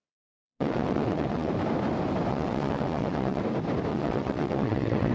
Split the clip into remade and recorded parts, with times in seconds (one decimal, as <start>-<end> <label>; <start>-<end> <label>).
0.0-1.5 remade; 1.5-2.3 recorded; 2.3-3.4 remade; 3.4-3.9 recorded; 3.9-5.1 remade

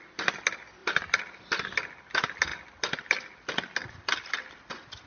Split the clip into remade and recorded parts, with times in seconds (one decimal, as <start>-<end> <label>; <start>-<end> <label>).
0.0-5.1 recorded